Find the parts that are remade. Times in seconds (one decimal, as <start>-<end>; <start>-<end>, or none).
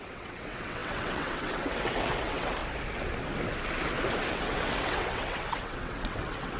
0.0-2.6; 4.3-6.6